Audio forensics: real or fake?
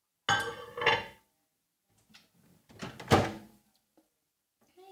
real